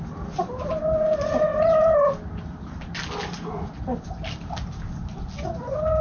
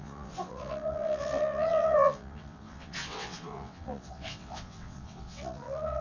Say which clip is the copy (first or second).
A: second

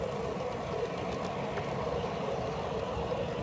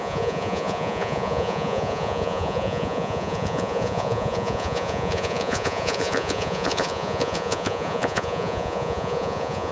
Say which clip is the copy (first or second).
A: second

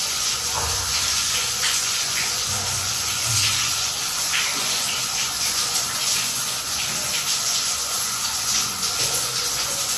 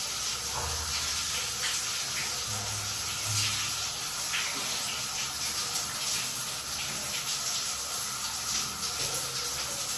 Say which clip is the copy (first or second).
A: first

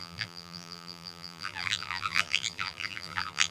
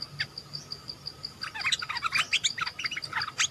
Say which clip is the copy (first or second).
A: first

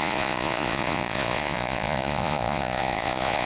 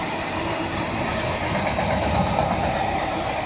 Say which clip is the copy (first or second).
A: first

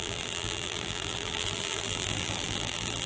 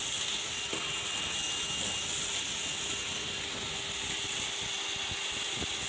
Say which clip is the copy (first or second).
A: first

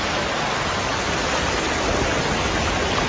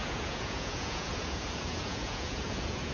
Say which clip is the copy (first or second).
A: second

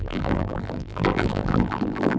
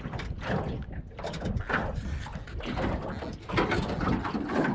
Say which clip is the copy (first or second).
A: first